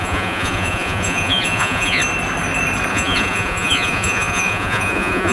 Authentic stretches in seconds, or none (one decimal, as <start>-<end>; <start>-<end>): 2.0-2.9